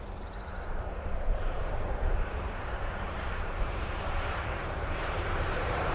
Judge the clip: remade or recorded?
remade